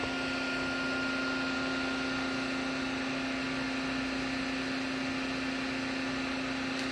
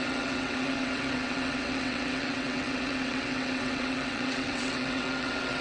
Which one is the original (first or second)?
first